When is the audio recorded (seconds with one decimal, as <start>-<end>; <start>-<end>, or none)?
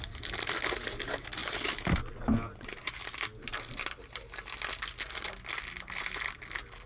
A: 0.0-6.9